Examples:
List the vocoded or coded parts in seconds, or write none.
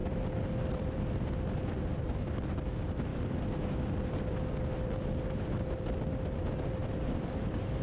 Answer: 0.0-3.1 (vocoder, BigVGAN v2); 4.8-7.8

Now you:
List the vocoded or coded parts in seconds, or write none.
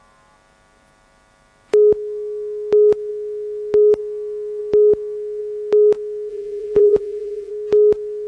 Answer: 6.3-7.5 (vocoder, BigVGAN v2)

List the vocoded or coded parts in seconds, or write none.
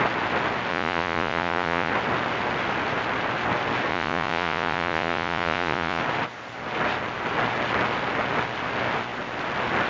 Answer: 0.7-1.9 (vocoder, Vocos); 3.9-6.0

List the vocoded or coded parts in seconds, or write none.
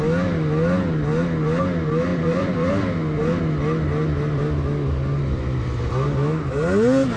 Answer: 2.1-2.7 (vocoder, BigVGAN v2)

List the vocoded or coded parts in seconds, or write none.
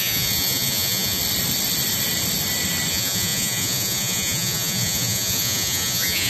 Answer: 0.0-1.2 (vocoder, Vocos); 2.9-6.3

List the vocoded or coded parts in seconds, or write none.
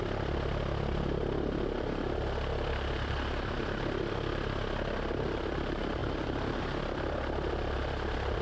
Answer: none